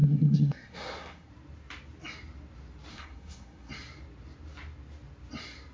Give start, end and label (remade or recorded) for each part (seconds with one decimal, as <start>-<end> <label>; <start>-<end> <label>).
0.0-1.3 remade; 1.3-2.9 recorded; 2.9-3.7 remade; 3.7-5.7 recorded